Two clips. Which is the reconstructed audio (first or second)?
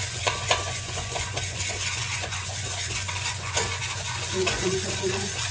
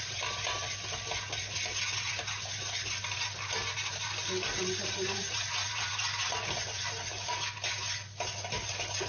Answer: first